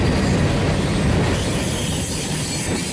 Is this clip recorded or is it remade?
recorded